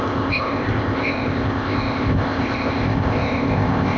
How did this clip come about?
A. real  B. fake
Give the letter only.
B